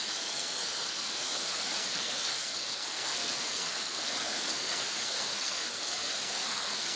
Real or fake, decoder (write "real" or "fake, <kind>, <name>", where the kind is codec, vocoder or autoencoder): fake, codec, SNAC